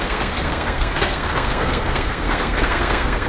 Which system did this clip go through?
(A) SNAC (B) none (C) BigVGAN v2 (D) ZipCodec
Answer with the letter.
A